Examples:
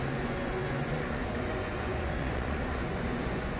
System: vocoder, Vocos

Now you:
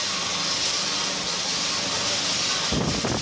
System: none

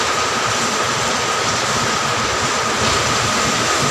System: none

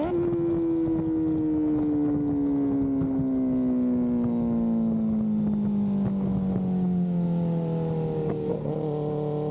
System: none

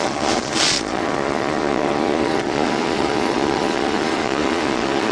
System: vocoder, Vocos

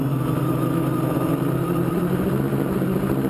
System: none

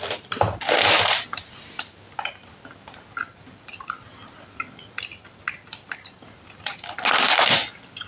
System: none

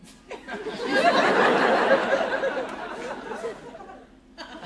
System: none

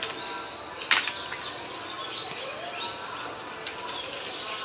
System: none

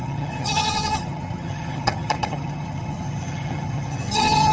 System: vocoder, HiFi-GAN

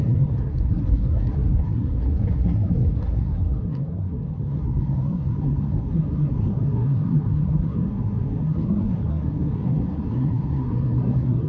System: codec, SNAC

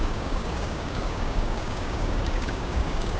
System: codec, DAC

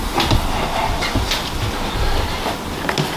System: none